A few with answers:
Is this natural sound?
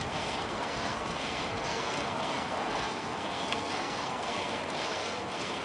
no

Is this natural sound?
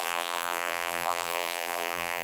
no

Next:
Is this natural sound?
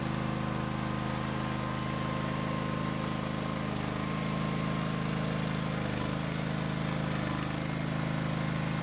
yes